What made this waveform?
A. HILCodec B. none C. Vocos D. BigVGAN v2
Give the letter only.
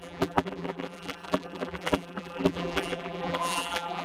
D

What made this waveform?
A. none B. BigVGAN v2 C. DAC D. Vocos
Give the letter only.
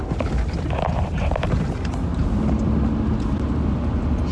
A